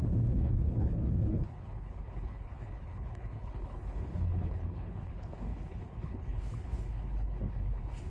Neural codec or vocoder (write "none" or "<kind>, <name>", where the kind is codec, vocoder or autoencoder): codec, HILCodec